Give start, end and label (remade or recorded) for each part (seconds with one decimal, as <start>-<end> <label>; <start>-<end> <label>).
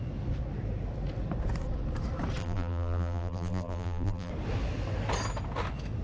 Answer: 0.0-2.4 recorded; 2.4-4.3 remade; 4.3-6.0 recorded